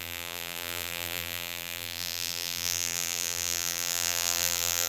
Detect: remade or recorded remade